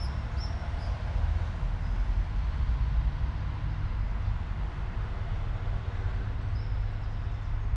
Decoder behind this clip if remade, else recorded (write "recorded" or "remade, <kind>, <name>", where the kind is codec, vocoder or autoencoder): recorded